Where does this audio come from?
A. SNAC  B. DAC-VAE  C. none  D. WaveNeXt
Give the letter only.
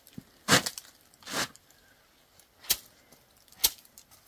C